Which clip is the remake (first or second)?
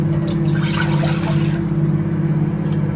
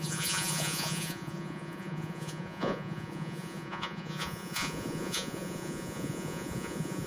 second